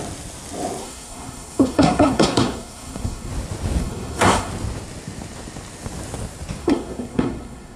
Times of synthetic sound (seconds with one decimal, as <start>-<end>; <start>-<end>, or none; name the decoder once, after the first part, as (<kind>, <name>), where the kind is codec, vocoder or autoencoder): 0.8-3.3 (codec, SNAC); 3.8-4.5; 6.6-7.8